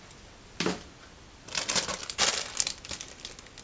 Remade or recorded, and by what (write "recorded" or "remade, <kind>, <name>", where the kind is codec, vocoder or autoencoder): recorded